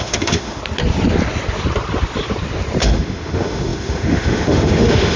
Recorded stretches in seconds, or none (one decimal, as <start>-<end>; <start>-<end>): 0.6-2.8